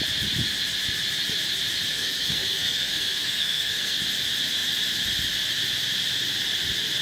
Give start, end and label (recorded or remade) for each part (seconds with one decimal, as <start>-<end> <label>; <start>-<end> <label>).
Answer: 0.0-1.9 recorded; 1.9-4.0 remade; 4.0-7.0 recorded